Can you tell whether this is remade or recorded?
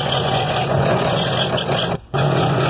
remade